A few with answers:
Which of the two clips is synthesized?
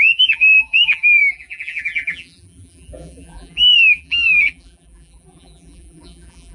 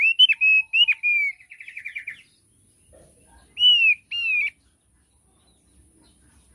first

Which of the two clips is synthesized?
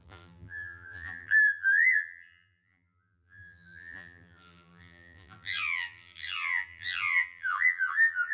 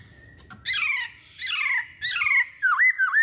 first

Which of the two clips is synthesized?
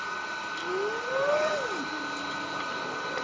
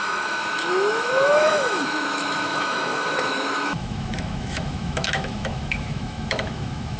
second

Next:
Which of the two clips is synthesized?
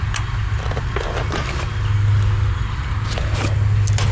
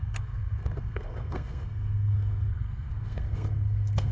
second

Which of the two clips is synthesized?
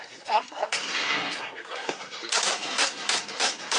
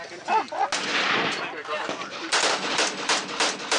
first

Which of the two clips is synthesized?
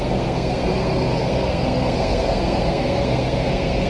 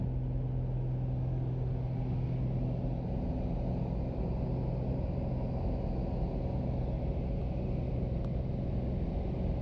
first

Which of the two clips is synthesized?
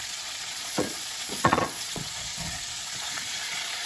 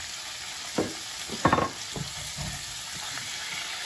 first